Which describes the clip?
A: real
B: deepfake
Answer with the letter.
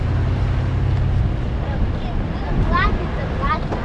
A